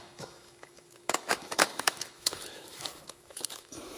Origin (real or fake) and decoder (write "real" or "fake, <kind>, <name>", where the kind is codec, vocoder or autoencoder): fake, autoencoder, DAC-VAE